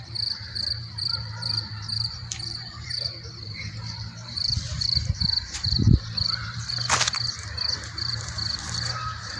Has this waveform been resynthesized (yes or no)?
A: yes